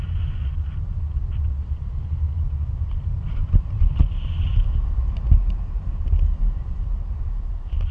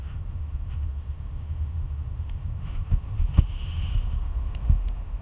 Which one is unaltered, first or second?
first